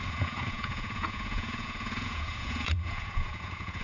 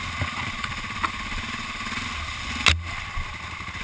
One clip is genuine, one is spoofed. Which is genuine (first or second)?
second